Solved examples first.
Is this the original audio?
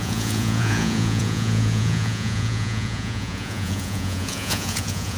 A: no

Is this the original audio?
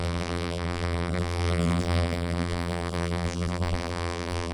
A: no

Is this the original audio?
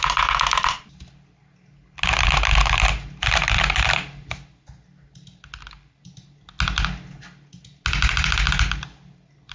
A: yes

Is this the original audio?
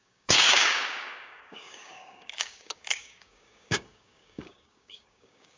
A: no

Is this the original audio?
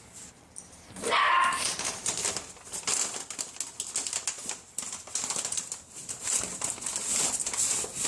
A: yes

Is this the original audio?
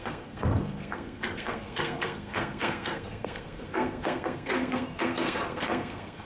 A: no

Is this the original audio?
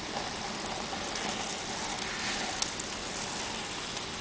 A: yes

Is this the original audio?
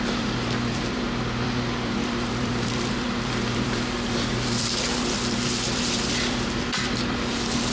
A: no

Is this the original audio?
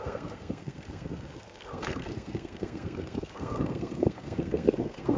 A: no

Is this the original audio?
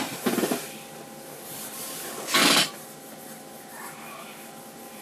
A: no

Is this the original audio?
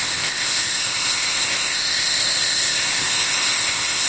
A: no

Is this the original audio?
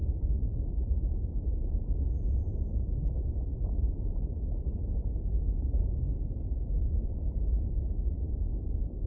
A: yes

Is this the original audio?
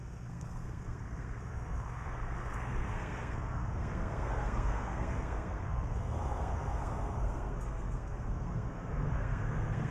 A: no